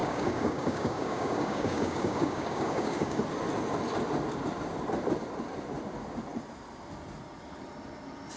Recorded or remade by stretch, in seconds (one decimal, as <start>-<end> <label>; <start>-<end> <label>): 0.0-3.2 remade; 3.2-8.4 recorded